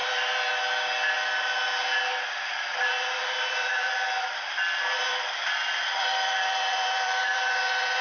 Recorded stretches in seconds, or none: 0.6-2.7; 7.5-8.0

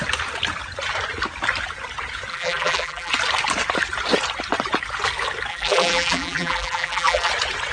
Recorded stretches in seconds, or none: 0.0-2.3; 3.1-5.5; 7.3-7.7

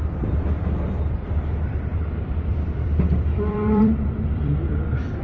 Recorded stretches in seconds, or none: none

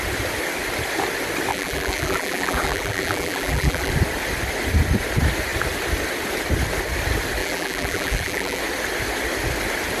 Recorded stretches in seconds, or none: 0.0-1.5; 3.9-7.4; 8.6-10.0

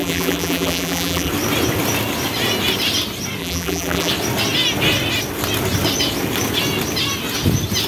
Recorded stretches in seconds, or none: 1.3-3.4; 4.1-7.9

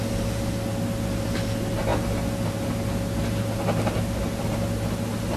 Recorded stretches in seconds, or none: 0.0-5.4

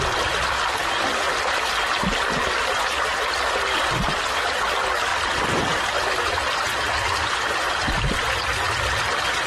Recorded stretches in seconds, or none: 0.0-3.1; 3.8-5.1; 8.2-9.5